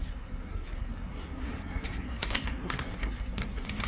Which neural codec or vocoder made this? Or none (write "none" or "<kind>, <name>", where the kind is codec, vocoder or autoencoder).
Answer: codec, SNAC